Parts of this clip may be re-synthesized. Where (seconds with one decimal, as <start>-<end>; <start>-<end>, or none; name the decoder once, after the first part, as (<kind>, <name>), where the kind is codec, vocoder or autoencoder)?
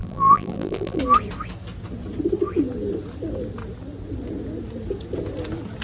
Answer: 0.0-1.0 (vocoder, BigVGAN v2)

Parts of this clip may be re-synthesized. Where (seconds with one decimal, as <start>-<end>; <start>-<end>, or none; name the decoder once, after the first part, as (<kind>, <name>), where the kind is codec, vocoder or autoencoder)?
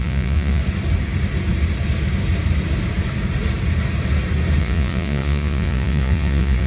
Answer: 0.0-0.6 (vocoder, Vocos); 4.6-6.7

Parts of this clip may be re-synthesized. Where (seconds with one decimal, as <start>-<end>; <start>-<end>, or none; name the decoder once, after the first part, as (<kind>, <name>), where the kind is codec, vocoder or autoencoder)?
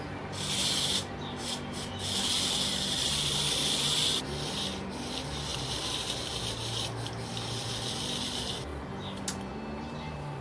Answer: 0.0-8.7 (vocoder, BigVGAN v2); 9.8-10.4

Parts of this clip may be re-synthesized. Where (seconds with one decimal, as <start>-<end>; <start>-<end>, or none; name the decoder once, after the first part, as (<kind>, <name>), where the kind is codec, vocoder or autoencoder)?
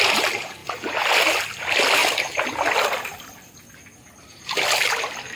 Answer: none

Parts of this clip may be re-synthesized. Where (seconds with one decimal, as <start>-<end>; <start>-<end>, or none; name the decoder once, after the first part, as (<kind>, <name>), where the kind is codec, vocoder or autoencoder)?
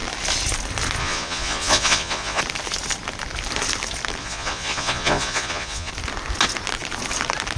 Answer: 1.0-2.4 (vocoder, Vocos); 4.2-5.9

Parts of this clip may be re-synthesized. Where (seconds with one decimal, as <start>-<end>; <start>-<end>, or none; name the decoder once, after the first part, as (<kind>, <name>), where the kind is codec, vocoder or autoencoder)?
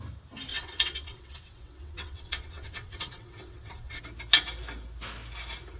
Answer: 0.5-4.0 (vocoder, WaveNeXt)